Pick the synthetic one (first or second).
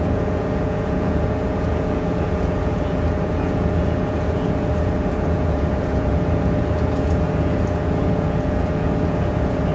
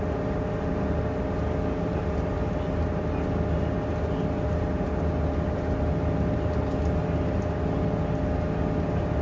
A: first